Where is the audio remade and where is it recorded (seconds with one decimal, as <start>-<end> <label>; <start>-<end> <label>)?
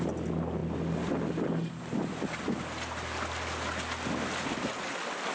0.0-5.3 recorded